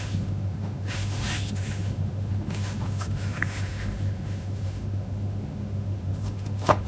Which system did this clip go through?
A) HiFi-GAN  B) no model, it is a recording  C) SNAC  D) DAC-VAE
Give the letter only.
D